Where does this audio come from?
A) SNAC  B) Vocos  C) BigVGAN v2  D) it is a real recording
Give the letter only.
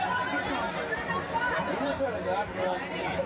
C